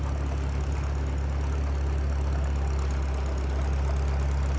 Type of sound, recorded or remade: recorded